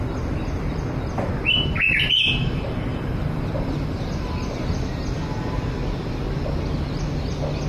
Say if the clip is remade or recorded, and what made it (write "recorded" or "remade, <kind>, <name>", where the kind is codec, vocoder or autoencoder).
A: recorded